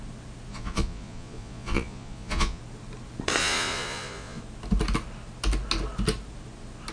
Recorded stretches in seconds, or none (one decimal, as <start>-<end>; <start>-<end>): 0.0-0.5; 2.6-3.4; 4.4-6.9